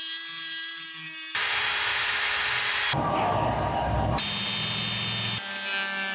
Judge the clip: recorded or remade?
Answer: recorded